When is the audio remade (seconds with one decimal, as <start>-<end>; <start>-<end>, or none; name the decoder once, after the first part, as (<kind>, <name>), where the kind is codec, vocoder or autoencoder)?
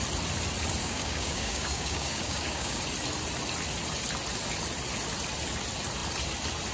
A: 0.8-2.8 (codec, DAC)